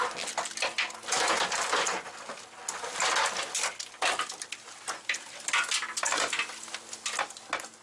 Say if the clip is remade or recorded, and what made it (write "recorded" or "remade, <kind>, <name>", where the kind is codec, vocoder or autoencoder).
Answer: recorded